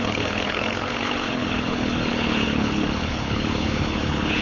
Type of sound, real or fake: fake